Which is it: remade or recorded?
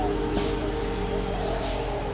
recorded